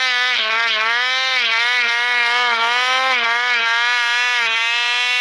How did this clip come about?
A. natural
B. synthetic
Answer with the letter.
A